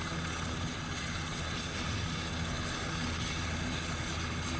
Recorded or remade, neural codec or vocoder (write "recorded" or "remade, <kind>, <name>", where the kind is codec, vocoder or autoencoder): recorded